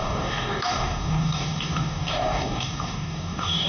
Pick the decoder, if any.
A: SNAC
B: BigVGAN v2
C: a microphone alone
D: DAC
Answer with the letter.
D